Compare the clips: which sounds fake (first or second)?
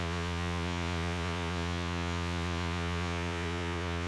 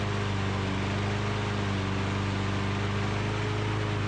first